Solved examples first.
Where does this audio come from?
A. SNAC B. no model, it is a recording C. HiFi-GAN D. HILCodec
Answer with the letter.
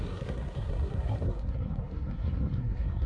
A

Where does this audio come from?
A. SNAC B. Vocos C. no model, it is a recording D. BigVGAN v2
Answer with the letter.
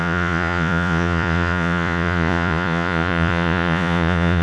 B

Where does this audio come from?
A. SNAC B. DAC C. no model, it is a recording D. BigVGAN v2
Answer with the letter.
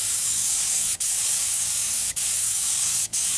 B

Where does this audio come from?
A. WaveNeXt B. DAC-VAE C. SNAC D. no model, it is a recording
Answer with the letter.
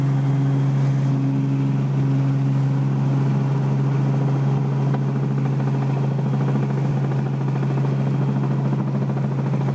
D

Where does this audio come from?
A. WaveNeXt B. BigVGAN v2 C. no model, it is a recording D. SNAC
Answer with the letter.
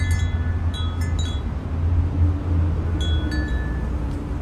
C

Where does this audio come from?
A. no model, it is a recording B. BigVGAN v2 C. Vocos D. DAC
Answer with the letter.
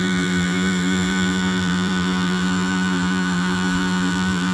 B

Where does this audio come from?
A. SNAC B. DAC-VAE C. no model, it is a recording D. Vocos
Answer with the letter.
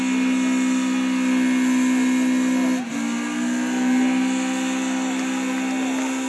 C